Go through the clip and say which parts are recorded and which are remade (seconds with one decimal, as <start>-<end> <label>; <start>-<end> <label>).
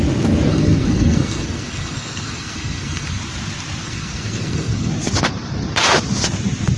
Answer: 0.0-0.5 recorded; 0.5-3.2 remade; 3.2-3.8 recorded; 3.8-4.9 remade; 4.9-6.8 recorded